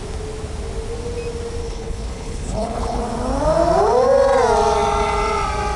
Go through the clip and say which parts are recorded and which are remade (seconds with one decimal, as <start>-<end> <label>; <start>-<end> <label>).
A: 0.0-1.6 recorded; 1.6-3.0 remade; 3.0-5.8 recorded